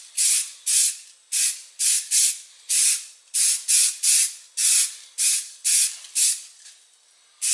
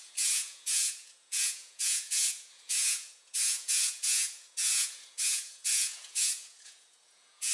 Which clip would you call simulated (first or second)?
second